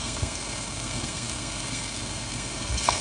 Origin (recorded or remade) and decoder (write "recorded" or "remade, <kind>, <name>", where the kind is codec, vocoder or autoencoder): remade, codec, SNAC